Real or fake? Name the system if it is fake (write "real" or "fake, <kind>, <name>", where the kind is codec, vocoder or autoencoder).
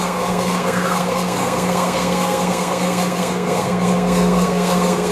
fake, codec, SNAC